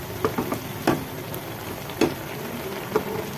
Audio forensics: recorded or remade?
recorded